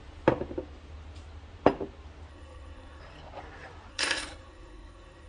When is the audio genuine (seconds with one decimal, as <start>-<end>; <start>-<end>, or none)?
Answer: 0.0-2.3; 3.0-3.9